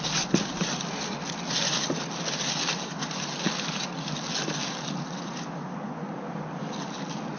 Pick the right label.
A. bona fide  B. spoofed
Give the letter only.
A